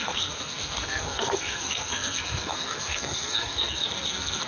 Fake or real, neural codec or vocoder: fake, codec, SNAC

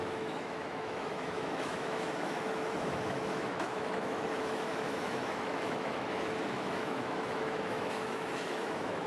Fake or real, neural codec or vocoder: fake, autoencoder, DAC-VAE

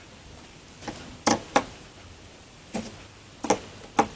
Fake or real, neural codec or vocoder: real